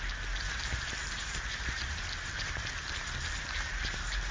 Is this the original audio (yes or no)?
yes